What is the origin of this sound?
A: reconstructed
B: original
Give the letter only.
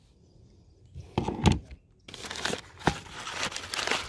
B